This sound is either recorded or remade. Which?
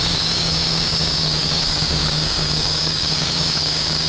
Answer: remade